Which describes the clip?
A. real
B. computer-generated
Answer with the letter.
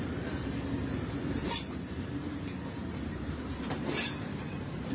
B